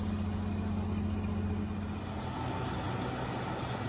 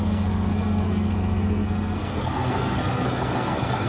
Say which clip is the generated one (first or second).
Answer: second